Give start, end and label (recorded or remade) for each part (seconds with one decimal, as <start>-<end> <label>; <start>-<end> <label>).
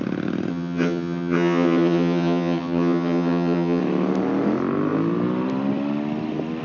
0.0-0.5 recorded; 0.5-3.8 remade; 3.8-6.6 recorded